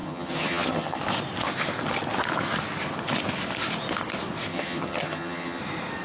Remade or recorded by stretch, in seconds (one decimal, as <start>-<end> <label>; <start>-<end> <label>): 0.0-1.0 remade; 1.0-4.5 recorded; 4.5-5.6 remade; 5.6-6.0 recorded